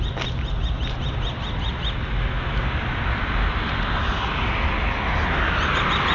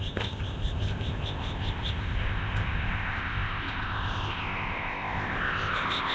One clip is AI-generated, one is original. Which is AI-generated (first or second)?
second